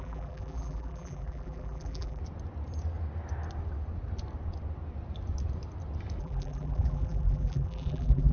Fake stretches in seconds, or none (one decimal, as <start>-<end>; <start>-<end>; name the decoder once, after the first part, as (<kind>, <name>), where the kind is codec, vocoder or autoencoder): 0.0-2.2 (vocoder, BigVGAN v2); 6.2-8.3